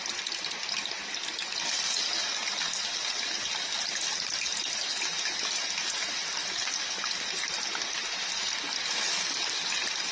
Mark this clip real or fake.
real